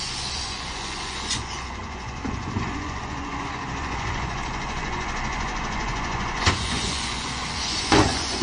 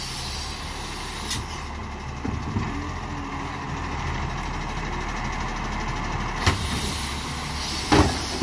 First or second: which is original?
second